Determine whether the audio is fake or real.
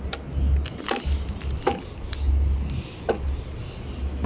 real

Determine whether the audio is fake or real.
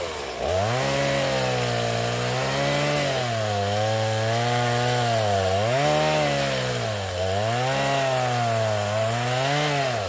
real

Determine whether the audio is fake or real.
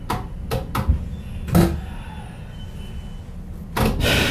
real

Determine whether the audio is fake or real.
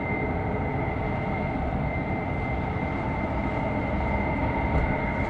real